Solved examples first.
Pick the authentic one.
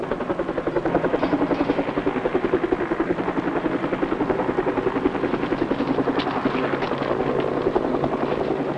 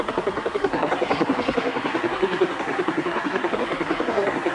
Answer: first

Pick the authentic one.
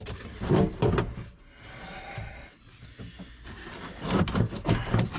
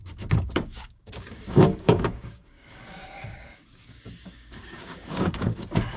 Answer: first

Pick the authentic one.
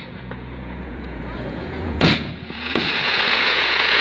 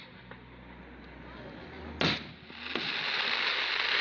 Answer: second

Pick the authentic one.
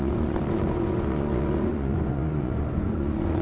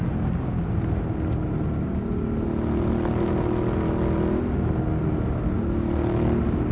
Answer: second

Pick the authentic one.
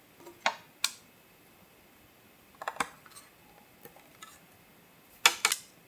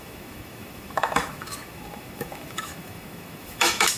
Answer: first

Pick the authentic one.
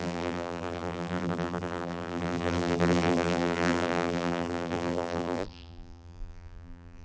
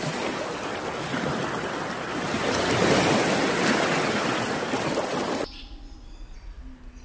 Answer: second